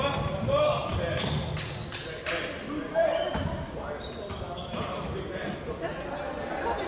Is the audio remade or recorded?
recorded